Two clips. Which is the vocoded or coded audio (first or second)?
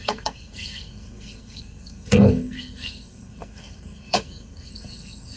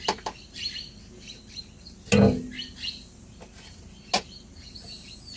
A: first